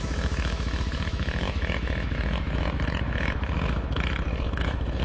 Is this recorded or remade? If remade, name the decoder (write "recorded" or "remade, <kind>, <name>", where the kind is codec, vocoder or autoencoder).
remade, autoencoder, DAC-VAE